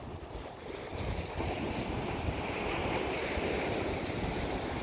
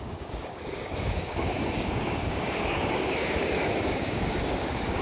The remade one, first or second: second